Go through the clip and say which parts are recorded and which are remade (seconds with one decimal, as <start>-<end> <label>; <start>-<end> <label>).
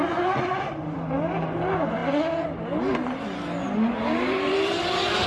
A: 0.0-3.6 recorded; 3.6-5.3 remade